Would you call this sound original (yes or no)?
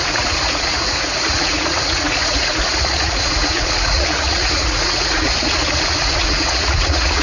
no